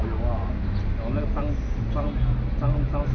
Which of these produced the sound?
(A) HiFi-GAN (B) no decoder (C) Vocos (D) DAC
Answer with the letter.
B